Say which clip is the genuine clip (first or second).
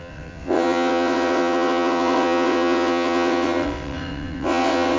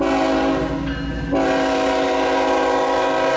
second